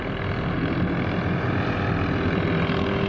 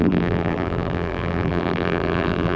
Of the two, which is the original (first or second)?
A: first